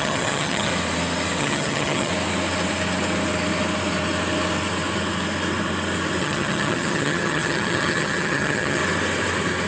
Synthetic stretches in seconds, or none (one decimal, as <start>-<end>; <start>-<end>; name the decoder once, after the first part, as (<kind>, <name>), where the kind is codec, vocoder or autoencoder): 0.0-0.7 (vocoder, HiFi-GAN); 1.4-2.1; 6.2-8.8